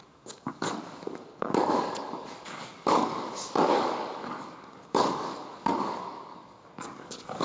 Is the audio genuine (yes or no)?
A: no